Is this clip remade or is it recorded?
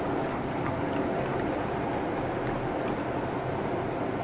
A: recorded